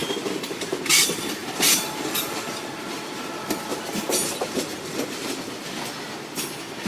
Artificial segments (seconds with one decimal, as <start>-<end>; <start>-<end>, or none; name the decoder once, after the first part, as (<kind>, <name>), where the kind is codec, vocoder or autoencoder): 0.0-0.8 (vocoder, BigVGAN v2); 1.4-3.3; 3.7-5.2